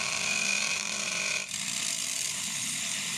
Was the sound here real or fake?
fake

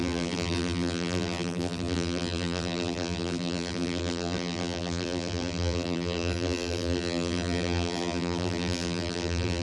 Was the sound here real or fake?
fake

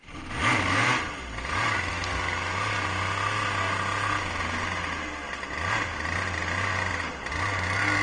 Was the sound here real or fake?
real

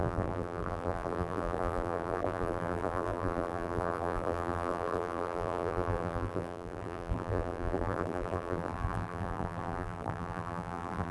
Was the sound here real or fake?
fake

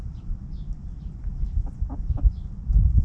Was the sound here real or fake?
fake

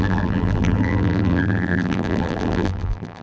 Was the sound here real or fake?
fake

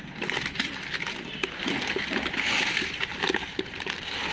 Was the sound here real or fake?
real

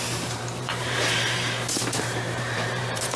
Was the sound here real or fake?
fake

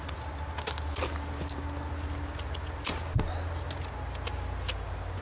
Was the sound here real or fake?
real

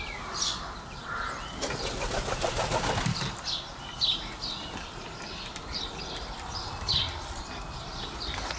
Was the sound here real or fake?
fake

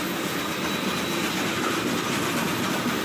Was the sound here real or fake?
real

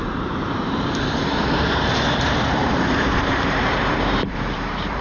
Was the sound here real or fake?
fake